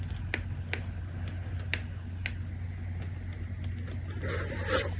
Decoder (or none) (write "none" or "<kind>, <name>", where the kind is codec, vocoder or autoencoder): none